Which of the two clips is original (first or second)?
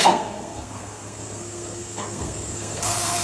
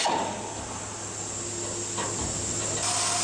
second